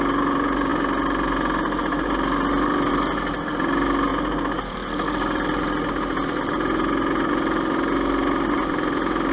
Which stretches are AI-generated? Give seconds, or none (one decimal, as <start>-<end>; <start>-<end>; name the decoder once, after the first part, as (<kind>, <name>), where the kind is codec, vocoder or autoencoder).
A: none